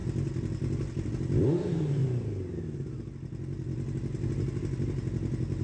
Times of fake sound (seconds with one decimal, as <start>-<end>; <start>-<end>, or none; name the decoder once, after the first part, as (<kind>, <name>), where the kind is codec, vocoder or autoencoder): 1.0-2.0 (vocoder, BigVGAN v2)